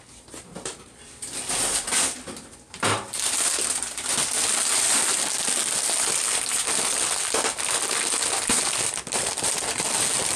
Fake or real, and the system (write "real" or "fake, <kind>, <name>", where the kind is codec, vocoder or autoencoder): real